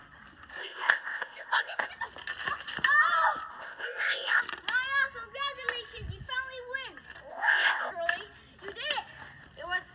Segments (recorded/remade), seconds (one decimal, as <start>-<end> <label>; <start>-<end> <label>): 0.0-0.6 recorded; 0.6-1.9 remade; 1.9-3.5 recorded; 3.5-4.4 remade; 4.4-7.3 recorded; 7.3-7.9 remade; 7.9-9.9 recorded